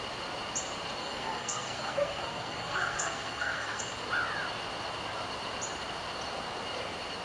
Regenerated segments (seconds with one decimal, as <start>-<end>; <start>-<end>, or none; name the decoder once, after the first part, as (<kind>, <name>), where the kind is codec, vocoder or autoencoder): 1.0-3.8 (codec, SNAC)